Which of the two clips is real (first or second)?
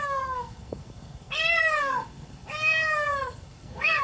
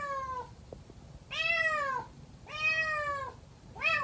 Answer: second